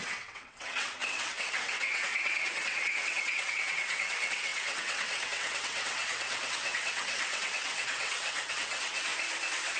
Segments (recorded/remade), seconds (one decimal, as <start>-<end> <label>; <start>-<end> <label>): 0.0-9.1 remade; 9.1-9.8 recorded